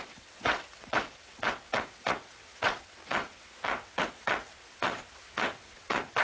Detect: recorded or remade remade